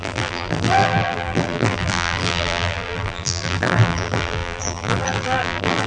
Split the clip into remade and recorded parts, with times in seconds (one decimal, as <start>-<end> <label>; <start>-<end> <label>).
0.0-5.9 remade